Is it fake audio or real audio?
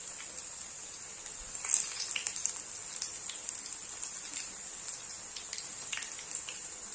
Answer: real